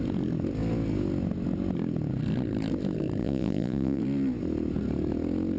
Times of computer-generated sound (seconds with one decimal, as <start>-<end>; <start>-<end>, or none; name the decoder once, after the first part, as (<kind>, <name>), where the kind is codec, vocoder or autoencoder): 3.2-4.0 (vocoder, Vocos)